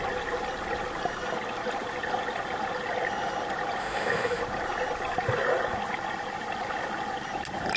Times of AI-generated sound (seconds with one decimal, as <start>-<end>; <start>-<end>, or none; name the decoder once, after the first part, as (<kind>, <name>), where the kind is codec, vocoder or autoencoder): 3.8-4.4 (autoencoder, DAC-VAE)

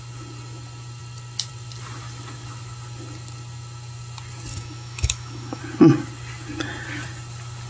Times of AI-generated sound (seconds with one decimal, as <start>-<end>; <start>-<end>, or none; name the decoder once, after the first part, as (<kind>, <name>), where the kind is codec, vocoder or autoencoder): 4.5-5.6 (autoencoder, DAC-VAE)

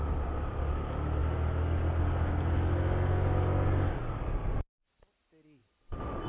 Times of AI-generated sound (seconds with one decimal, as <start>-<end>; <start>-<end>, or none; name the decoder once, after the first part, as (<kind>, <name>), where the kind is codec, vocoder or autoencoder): none

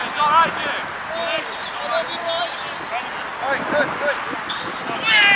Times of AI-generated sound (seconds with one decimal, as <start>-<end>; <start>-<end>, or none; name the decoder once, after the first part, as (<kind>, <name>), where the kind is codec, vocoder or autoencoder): none

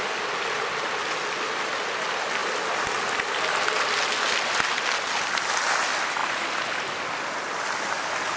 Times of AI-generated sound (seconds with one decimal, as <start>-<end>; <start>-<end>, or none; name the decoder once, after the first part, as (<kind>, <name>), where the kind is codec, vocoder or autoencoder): none